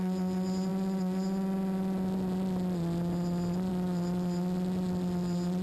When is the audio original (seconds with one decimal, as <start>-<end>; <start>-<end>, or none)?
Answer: 0.0-5.6